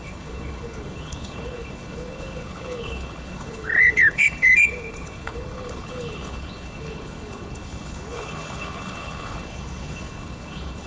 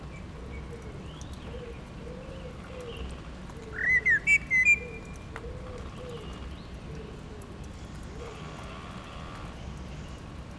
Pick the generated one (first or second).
first